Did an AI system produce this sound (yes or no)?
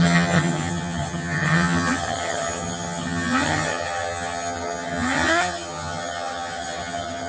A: yes